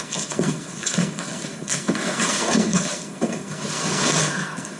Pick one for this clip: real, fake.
fake